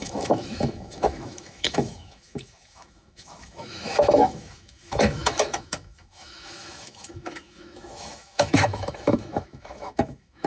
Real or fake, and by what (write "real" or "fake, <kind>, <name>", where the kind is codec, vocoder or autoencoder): fake, autoencoder, DAC-VAE